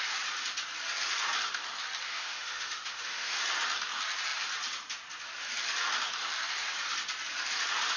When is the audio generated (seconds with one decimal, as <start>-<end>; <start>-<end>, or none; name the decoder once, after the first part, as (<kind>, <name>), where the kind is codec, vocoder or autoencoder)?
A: 2.1-3.4 (autoencoder, DAC-VAE)